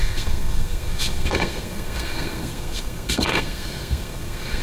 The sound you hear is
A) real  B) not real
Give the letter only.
B